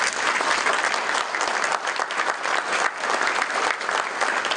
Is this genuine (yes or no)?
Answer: yes